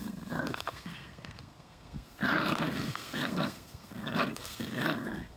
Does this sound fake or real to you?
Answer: fake